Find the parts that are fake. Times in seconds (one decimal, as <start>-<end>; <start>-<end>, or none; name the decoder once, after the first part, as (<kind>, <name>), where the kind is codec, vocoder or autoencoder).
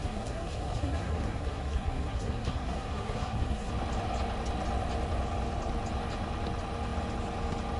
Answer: 0.0-3.7 (codec, SNAC)